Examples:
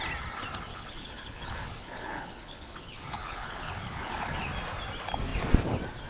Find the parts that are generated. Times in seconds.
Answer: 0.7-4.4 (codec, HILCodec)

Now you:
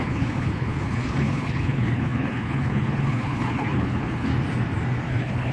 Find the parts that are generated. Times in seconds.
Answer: 0.0-4.3 (codec, HILCodec); 5.1-5.5